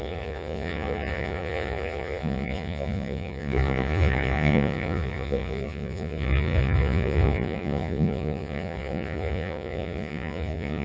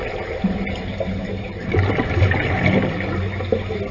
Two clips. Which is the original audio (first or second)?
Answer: second